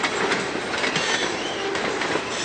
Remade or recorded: recorded